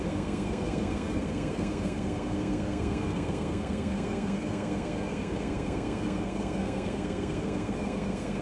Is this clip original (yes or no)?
no